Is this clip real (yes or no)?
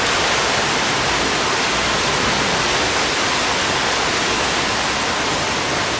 yes